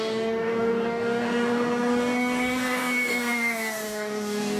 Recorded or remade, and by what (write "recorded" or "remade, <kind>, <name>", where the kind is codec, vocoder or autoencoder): remade, codec, DAC